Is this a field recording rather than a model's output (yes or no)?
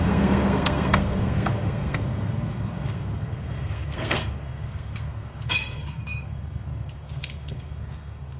no